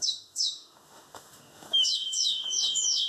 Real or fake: fake